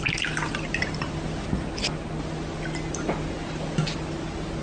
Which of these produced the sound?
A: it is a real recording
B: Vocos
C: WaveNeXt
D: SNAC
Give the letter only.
A